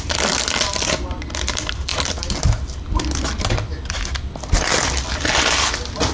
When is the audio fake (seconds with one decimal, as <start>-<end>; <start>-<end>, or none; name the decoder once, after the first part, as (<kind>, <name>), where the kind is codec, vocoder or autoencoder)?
none

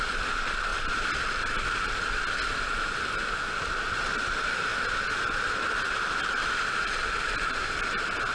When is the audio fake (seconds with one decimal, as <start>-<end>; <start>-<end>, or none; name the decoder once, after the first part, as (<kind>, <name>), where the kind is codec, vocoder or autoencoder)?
none

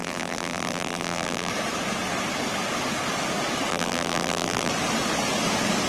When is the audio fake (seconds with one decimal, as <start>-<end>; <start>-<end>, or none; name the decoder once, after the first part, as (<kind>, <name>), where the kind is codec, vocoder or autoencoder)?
0.0-1.5 (vocoder, BigVGAN v2); 3.7-4.7

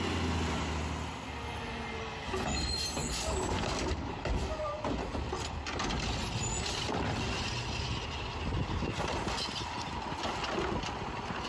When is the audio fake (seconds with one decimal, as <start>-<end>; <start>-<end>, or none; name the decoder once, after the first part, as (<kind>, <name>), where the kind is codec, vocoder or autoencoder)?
3.0-4.1 (codec, DAC)